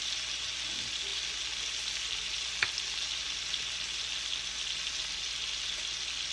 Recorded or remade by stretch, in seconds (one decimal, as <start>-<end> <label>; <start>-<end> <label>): 0.0-6.3 recorded